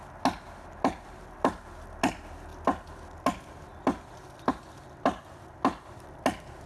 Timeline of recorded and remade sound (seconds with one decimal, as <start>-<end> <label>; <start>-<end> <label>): 0.0-6.7 recorded